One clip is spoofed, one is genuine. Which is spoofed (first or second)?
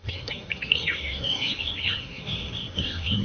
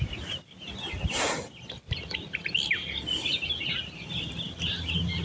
first